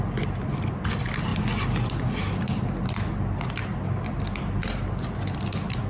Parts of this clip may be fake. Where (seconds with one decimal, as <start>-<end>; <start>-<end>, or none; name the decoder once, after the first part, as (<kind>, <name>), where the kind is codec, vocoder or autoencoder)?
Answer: none